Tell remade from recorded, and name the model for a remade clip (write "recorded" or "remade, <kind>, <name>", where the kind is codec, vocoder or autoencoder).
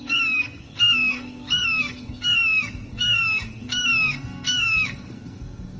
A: remade, codec, SNAC